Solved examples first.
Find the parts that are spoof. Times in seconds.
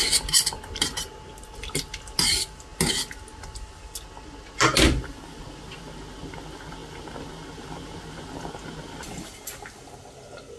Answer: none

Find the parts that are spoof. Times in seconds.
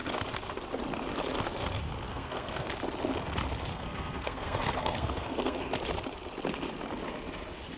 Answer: 2.1-2.7 (codec, SNAC); 3.7-5.7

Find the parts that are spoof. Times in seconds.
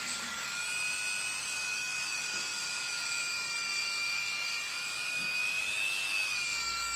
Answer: 0.0-0.6 (codec, DAC); 1.4-7.0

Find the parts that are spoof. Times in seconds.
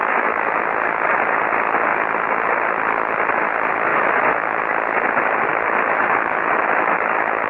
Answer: 0.0-0.6 (autoencoder, DAC-VAE); 3.9-4.6; 5.5-7.5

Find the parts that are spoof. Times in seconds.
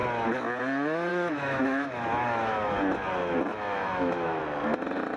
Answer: 1.1-2.7 (autoencoder, DAC-VAE); 3.5-4.4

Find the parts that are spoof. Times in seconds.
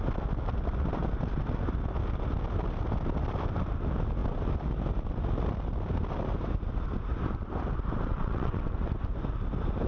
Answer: 8.1-8.9 (vocoder, WaveNeXt)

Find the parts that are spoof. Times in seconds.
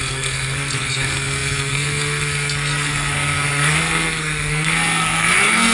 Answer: 0.0-5.7 (codec, SNAC)